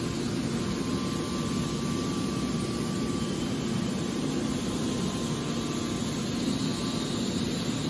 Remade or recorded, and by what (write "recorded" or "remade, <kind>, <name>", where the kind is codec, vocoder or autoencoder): recorded